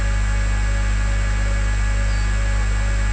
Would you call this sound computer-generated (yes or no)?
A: no